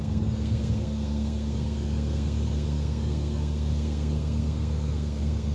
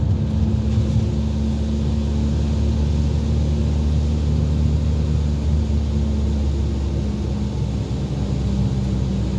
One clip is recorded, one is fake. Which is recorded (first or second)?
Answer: second